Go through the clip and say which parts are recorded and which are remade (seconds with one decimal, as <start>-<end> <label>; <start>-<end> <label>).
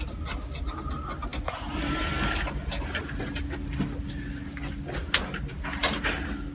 0.0-6.5 recorded